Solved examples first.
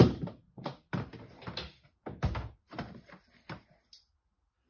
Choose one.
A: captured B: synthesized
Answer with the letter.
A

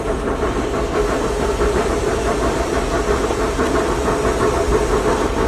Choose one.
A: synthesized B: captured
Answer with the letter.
B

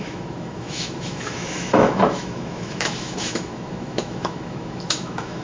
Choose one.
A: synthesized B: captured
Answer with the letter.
A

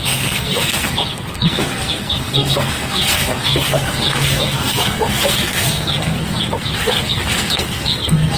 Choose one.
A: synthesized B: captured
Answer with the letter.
A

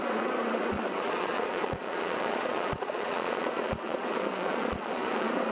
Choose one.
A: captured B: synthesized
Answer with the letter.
B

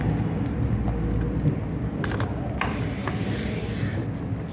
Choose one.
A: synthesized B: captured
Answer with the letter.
B